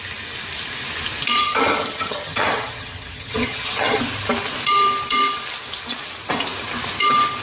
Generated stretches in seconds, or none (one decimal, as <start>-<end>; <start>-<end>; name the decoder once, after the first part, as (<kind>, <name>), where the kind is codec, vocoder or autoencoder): 1.4-4.0 (vocoder, HiFi-GAN)